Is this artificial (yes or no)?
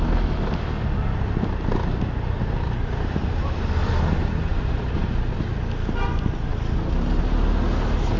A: no